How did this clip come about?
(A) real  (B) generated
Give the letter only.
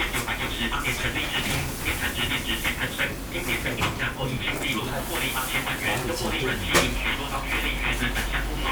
A